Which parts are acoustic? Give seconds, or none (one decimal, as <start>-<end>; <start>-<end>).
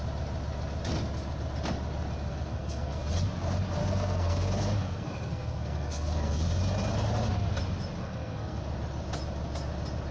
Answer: 0.0-2.3; 3.0-3.8; 6.6-8.0; 8.6-10.1